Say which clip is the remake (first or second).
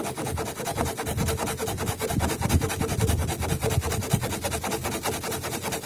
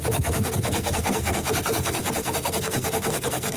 second